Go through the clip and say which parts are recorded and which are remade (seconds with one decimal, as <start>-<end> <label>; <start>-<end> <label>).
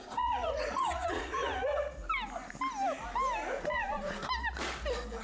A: 0.0-1.7 remade; 1.7-3.6 recorded; 3.6-4.2 remade; 4.2-5.2 recorded